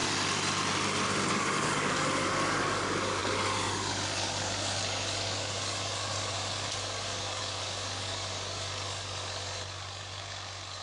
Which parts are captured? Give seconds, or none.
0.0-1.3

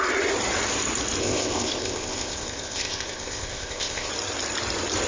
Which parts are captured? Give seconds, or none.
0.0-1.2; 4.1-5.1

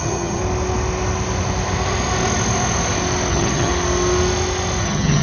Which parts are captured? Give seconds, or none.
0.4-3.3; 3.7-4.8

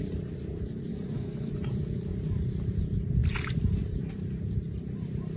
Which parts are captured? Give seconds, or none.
0.0-0.9; 1.5-5.4

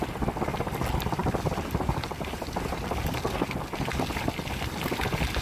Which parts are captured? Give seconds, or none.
0.0-5.4